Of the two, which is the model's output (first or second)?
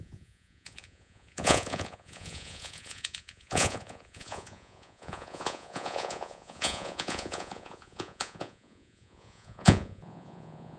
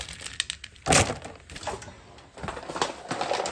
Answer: first